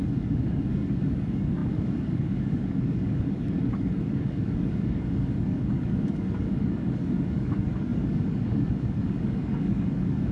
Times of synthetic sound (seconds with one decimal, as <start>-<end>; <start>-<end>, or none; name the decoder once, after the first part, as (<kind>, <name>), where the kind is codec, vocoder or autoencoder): 0.0-10.3 (codec, DAC)